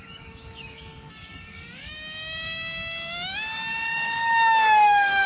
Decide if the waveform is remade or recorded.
remade